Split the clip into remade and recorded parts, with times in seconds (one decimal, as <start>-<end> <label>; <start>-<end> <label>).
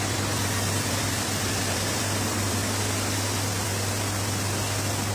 0.0-2.6 remade; 2.6-5.1 recorded